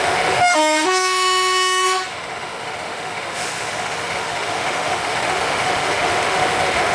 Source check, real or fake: fake